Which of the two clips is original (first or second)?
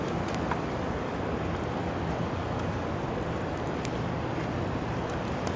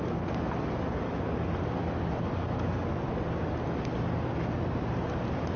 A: second